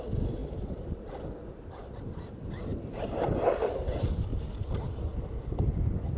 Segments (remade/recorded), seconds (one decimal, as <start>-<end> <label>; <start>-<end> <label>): 0.0-0.4 recorded; 0.4-1.1 remade; 1.1-4.3 recorded; 4.3-5.4 remade; 5.4-6.2 recorded